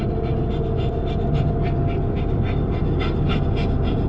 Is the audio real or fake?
real